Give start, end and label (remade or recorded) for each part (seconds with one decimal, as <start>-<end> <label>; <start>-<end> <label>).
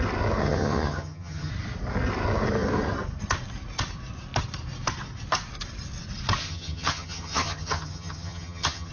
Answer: 0.0-0.4 recorded; 0.4-1.5 remade; 1.5-6.4 recorded; 6.4-8.9 remade